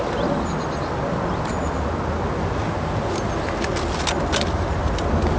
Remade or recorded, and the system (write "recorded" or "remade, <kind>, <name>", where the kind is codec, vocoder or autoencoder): recorded